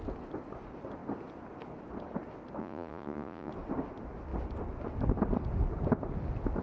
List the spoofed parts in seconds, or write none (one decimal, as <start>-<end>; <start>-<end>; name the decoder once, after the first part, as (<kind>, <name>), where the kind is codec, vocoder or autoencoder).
2.6-3.5 (vocoder, Vocos)